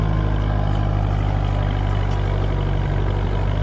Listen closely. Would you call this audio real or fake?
real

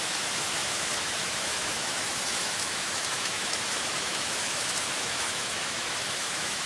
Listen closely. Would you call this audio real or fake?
fake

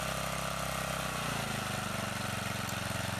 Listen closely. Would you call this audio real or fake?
real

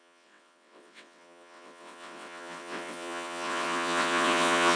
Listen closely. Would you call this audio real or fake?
fake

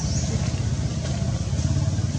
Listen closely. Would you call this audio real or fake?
real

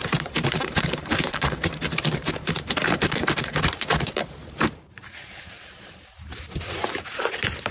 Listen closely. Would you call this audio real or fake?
fake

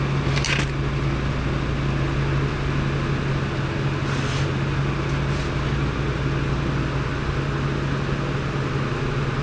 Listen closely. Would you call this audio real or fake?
real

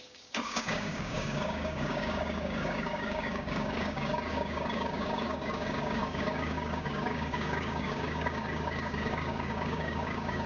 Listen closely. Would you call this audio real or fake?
fake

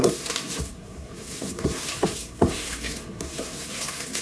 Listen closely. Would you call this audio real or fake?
fake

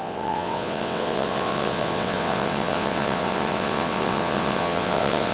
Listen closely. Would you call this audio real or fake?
fake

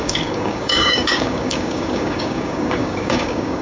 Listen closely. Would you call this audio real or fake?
fake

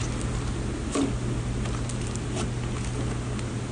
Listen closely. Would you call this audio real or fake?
real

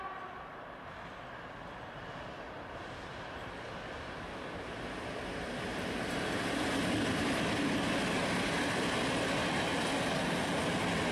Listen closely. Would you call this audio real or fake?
real